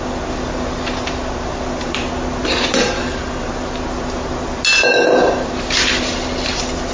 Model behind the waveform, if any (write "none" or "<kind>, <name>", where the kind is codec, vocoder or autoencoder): none